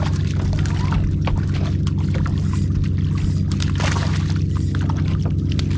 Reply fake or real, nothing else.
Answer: real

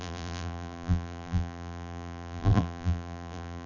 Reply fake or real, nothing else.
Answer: fake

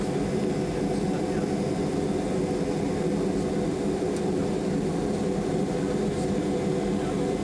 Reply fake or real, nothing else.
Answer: real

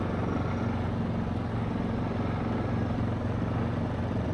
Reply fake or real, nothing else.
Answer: real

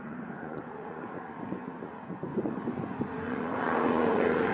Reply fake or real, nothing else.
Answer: fake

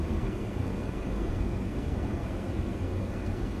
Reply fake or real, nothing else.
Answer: fake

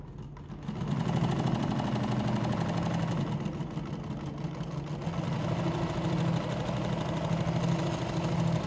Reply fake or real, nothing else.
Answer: real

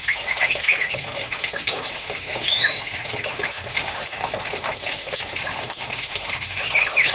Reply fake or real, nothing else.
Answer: fake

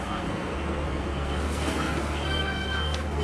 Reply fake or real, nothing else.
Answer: fake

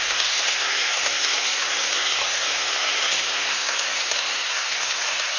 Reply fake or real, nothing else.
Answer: fake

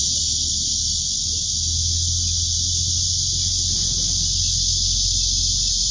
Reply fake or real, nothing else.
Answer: real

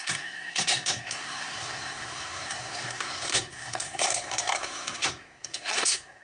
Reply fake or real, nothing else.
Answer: fake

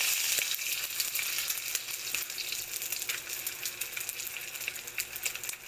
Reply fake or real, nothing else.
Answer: real